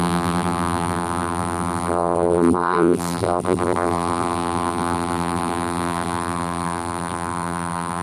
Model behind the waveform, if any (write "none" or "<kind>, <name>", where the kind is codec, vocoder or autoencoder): vocoder, BigVGAN v2